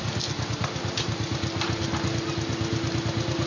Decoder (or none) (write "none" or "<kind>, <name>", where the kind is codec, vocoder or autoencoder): none